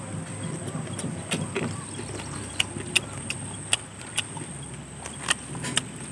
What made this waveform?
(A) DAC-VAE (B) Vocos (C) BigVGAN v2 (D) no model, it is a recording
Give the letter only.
D